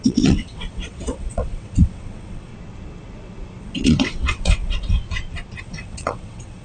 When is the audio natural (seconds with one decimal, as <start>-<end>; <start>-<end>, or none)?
2.5-3.6; 5.0-5.6